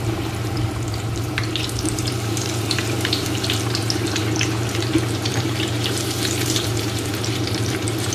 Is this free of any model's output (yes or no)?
no